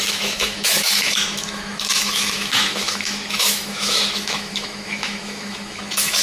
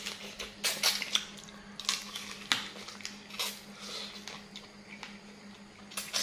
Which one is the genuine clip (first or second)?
second